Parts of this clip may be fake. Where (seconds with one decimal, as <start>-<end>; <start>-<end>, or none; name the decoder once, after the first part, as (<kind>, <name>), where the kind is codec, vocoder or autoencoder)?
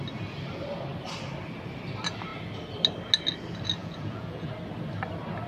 3.8-4.5 (vocoder, Vocos)